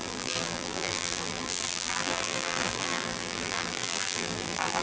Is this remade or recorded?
remade